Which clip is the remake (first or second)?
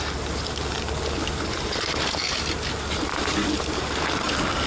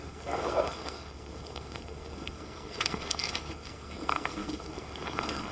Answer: second